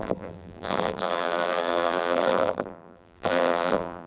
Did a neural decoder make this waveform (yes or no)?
yes